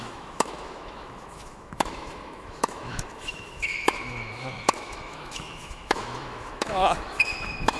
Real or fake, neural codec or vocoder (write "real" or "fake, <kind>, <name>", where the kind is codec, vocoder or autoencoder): fake, autoencoder, DAC-VAE